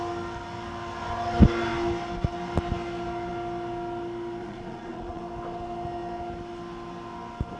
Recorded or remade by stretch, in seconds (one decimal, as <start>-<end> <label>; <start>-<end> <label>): 0.0-4.4 recorded; 4.4-5.2 remade; 5.2-7.6 recorded